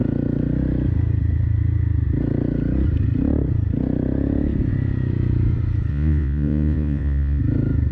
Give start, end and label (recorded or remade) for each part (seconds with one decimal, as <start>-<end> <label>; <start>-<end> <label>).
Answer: 0.0-5.9 recorded; 5.9-7.4 remade; 7.4-7.9 recorded